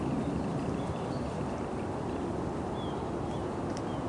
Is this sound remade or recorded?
recorded